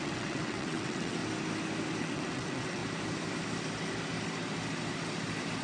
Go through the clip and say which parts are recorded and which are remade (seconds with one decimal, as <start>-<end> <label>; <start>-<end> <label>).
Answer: 0.0-1.2 remade; 1.2-2.0 recorded; 2.0-2.8 remade; 2.8-5.6 recorded